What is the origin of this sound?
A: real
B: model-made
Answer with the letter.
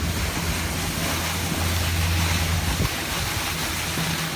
A